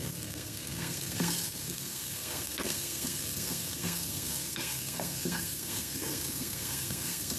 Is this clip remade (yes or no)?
yes